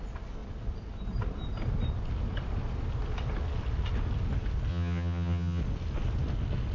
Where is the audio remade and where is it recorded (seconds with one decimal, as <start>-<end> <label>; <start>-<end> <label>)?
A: 0.0-4.7 recorded; 4.7-5.6 remade; 5.6-6.7 recorded